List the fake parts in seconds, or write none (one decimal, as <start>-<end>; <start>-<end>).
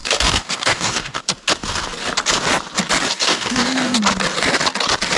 0.0-1.2; 3.1-4.0